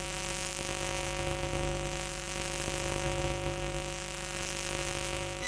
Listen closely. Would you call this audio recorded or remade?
remade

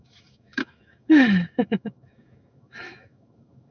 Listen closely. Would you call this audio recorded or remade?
remade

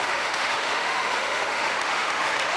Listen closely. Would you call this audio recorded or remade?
remade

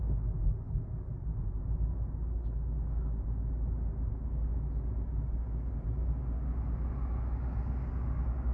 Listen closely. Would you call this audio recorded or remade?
recorded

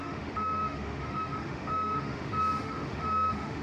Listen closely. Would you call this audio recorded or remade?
remade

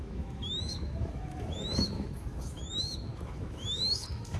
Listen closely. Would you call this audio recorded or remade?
remade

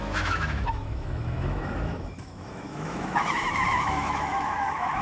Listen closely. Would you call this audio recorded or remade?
remade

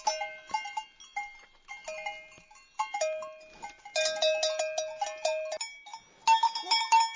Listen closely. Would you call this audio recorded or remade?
recorded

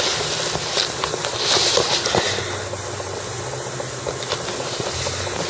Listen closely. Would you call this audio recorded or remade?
recorded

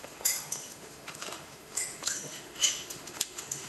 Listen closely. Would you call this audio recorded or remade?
remade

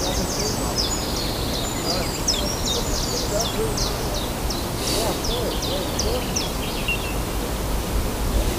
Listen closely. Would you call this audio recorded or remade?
recorded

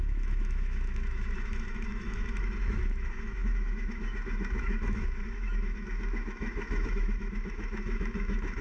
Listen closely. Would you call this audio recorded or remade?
remade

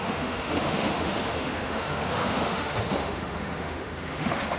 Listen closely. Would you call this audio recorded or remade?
remade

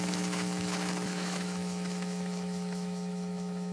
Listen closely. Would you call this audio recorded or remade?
remade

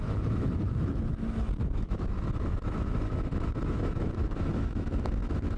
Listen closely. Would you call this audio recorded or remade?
remade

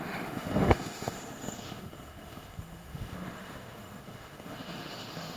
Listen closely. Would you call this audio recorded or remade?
remade